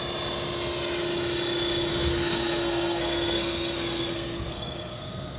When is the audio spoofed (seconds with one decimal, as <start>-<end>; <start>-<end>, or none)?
1.9-5.4